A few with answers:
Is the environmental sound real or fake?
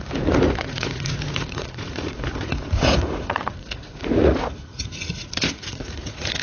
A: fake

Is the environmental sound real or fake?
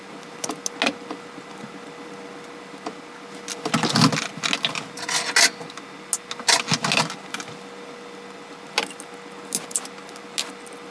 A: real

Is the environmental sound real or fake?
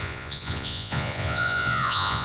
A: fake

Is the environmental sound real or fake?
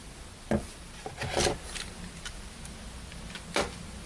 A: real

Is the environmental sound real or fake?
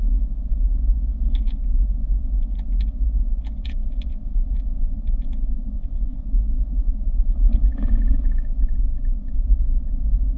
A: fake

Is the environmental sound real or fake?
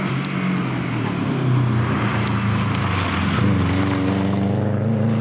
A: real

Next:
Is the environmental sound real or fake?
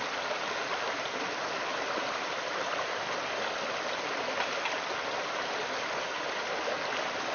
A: real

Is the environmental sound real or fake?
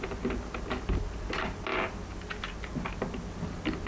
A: real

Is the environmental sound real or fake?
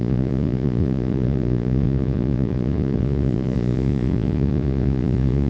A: fake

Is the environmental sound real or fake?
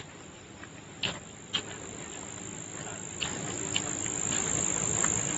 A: real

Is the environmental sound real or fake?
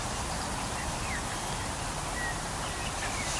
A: real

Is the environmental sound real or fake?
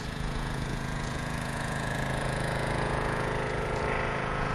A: fake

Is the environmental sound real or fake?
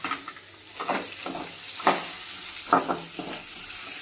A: real